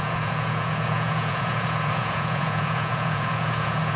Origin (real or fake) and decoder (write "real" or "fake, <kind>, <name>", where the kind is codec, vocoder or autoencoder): fake, vocoder, Vocos